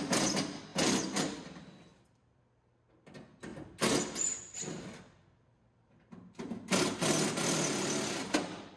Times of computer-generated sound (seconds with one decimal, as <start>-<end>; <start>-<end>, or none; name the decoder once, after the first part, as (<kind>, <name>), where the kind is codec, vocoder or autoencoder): 0.7-2.4 (vocoder, BigVGAN v2)